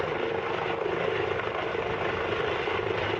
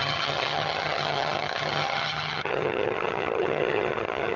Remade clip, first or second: second